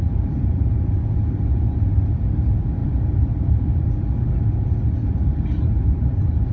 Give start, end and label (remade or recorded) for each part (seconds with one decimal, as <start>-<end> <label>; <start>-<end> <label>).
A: 0.0-0.6 remade; 0.6-2.8 recorded; 2.8-3.9 remade; 3.9-5.0 recorded; 5.0-6.5 remade